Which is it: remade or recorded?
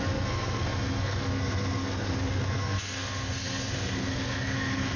remade